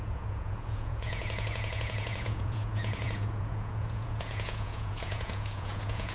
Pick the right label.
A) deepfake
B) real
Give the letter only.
A